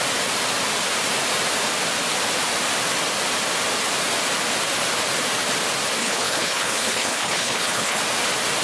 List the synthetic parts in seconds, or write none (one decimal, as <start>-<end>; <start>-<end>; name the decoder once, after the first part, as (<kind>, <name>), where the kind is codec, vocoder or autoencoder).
6.0-8.0 (codec, HILCodec)